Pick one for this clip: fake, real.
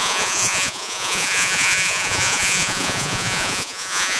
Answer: fake